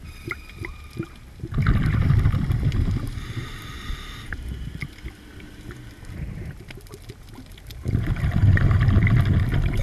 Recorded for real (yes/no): yes